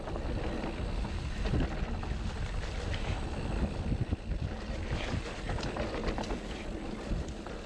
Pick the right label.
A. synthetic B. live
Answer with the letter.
B